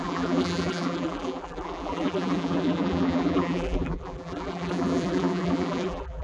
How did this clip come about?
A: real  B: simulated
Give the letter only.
B